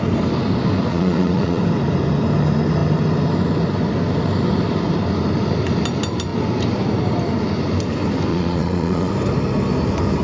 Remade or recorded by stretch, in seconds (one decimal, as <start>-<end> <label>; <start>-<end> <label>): 0.0-0.9 recorded; 0.9-1.6 remade; 1.6-8.3 recorded; 8.3-9.1 remade; 9.1-10.2 recorded